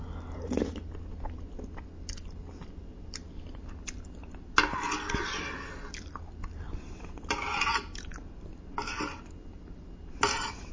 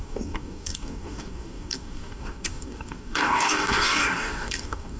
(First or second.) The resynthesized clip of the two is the second